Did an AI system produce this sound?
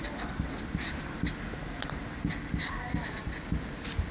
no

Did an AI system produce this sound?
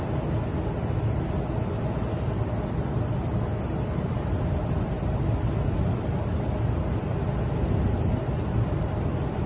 no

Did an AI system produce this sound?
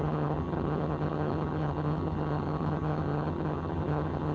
yes